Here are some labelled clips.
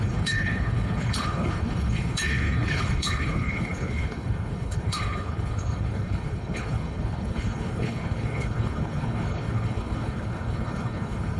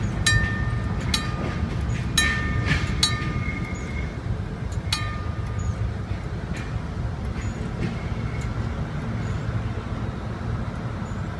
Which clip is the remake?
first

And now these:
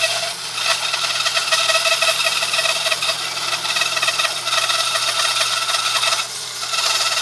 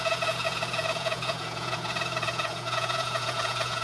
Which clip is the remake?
second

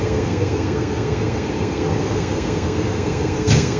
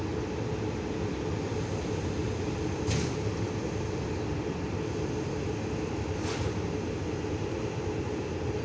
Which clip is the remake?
first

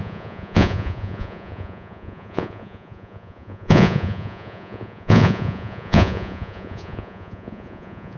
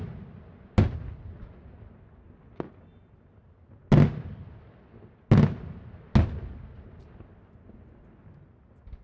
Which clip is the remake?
first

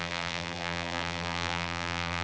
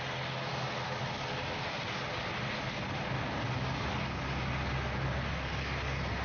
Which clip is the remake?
first